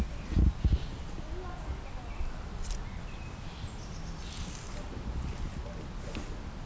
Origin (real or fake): real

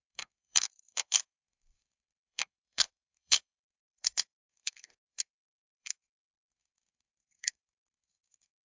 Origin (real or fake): fake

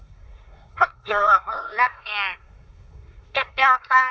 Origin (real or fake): fake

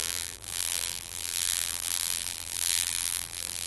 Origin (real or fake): fake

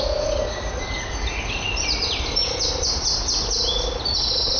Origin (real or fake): real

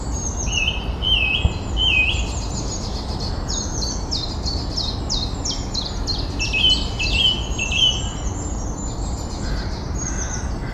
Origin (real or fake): real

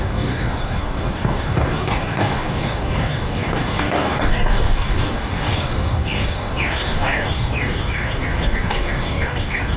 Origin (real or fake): fake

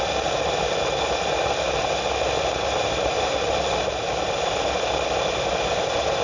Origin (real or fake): real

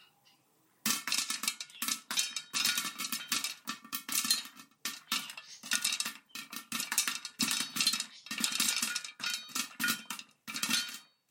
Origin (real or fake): real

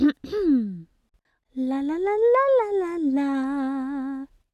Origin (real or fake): real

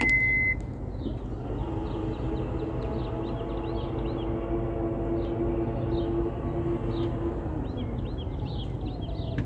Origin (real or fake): real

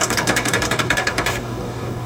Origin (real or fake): fake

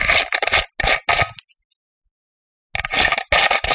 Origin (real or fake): real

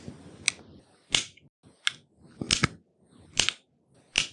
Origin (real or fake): real